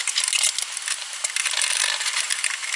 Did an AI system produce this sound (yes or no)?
no